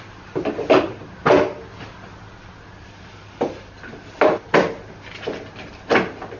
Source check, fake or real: real